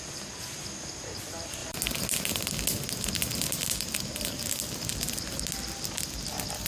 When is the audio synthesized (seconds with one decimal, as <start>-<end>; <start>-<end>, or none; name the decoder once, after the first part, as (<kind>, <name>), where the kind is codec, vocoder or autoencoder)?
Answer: none